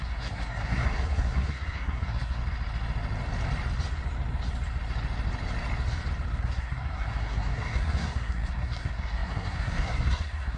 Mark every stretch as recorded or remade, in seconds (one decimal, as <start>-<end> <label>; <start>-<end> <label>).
0.0-2.4 remade; 2.4-6.4 recorded; 6.4-10.6 remade